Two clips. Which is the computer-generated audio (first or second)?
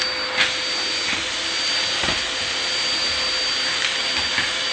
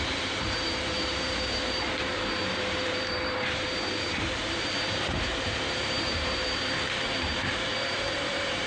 second